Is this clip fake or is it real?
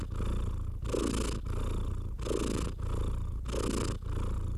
real